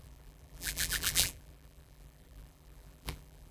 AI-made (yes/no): yes